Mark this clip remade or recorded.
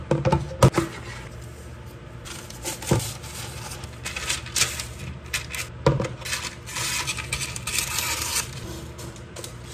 recorded